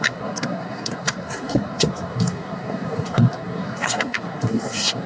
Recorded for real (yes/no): no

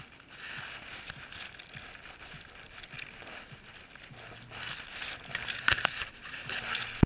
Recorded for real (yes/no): yes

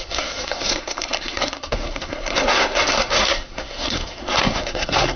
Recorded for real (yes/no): no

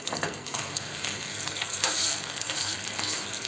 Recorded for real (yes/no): no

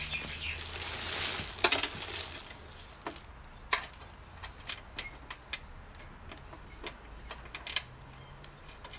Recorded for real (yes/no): yes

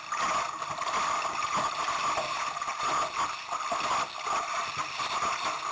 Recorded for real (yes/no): yes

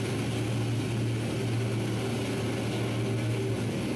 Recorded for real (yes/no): yes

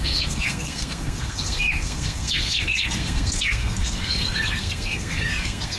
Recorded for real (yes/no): no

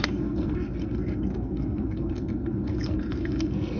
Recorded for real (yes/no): no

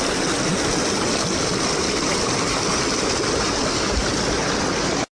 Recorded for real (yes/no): yes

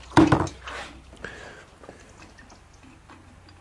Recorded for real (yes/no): yes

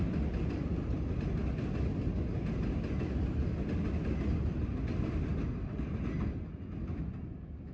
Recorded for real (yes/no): yes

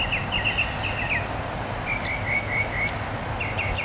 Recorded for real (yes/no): yes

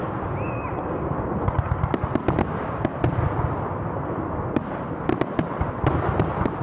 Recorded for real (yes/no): yes